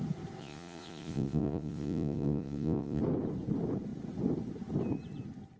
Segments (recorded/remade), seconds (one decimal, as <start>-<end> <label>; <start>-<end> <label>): 0.0-0.4 recorded; 0.4-3.0 remade; 3.0-5.6 recorded